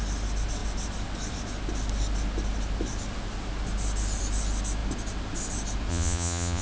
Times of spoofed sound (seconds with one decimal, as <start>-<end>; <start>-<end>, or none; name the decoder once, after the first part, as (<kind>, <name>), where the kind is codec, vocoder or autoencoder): 5.9-6.6 (vocoder, Vocos)